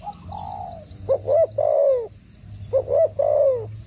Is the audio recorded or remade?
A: recorded